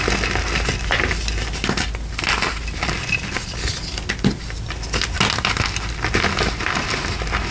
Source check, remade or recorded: recorded